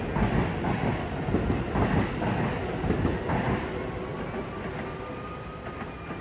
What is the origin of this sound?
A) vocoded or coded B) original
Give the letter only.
B